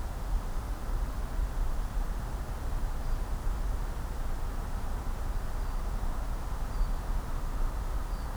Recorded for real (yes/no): yes